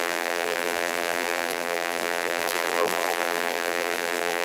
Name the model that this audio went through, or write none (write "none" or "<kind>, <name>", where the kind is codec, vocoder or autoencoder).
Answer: vocoder, BigVGAN v2